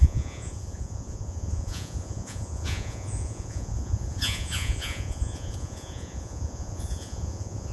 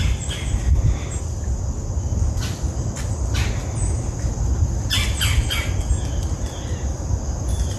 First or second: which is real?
second